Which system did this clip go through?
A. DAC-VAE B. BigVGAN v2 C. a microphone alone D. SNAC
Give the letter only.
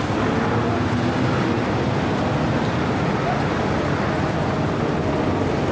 C